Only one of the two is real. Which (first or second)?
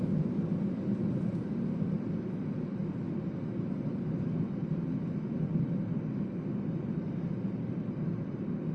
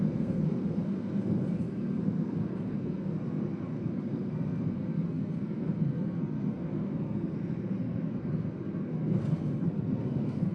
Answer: first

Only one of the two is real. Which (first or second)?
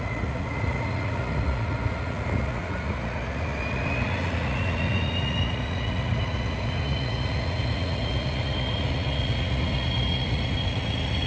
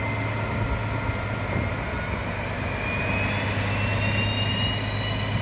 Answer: second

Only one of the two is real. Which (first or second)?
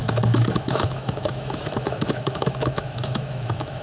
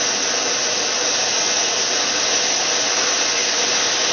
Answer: second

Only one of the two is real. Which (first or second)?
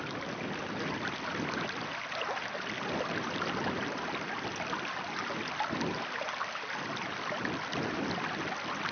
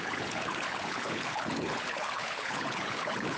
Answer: first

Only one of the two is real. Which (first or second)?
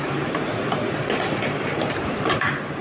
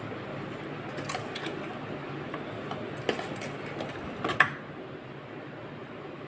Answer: second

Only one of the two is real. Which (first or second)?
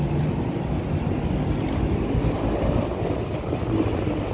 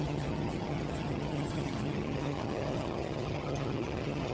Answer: first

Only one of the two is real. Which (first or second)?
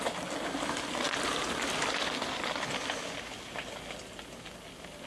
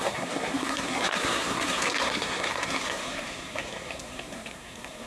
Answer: first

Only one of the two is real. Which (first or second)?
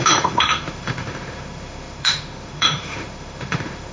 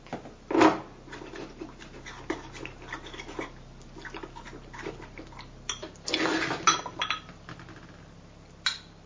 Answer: second